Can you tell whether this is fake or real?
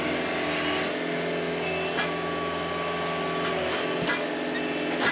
real